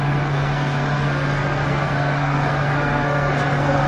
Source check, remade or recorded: remade